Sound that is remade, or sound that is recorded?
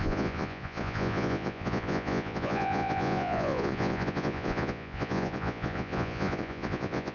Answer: remade